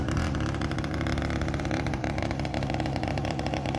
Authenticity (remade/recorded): remade